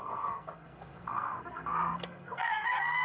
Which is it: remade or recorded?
remade